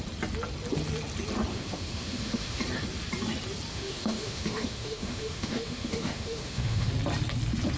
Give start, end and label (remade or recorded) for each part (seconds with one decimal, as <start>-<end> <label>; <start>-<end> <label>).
0.0-1.5 recorded; 1.5-2.6 remade; 2.6-3.7 recorded; 3.7-6.9 remade; 6.9-7.8 recorded